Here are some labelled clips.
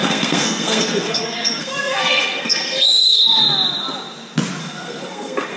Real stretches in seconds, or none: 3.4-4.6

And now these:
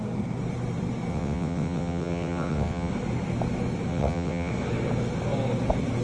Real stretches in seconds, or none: 0.0-1.1; 2.9-3.9; 4.5-6.0

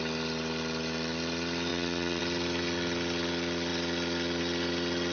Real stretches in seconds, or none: 0.0-1.7; 2.2-5.1

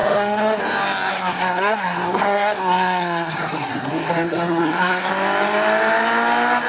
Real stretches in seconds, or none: 0.6-1.1; 5.1-6.7

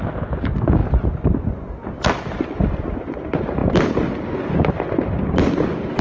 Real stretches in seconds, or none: 0.0-6.0